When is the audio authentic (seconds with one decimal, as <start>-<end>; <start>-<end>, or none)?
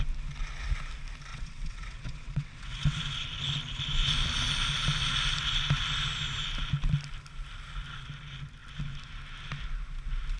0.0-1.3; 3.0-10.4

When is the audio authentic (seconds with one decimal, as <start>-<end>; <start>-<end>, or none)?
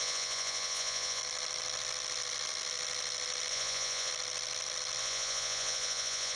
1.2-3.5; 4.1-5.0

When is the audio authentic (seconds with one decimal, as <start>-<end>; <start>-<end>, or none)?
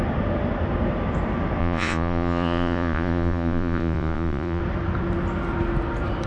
0.0-1.6; 4.6-6.3